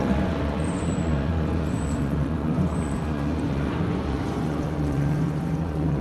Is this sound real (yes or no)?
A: no